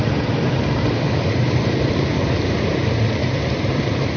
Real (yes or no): yes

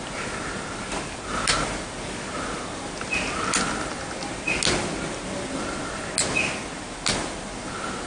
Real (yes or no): yes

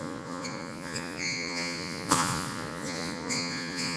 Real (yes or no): no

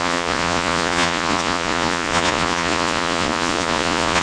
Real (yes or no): no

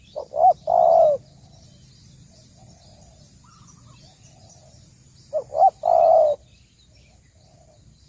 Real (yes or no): yes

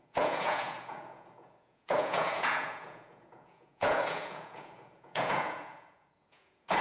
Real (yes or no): no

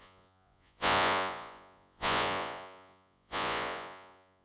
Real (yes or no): no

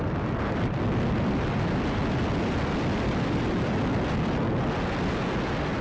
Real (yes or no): yes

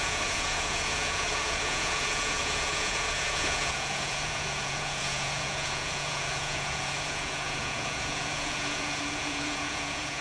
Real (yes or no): no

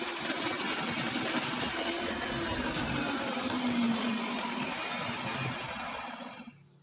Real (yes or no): yes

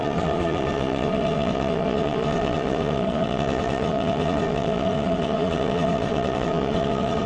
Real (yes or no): no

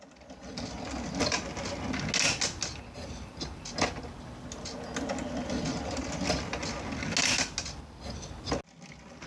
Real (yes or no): yes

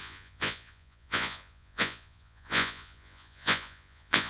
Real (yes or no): no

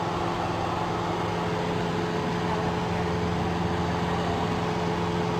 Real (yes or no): yes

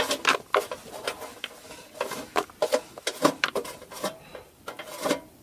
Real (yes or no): yes